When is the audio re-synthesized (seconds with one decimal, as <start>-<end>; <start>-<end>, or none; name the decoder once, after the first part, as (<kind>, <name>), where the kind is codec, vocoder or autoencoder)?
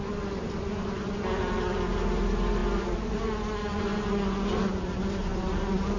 none